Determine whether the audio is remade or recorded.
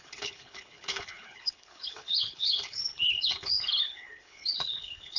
remade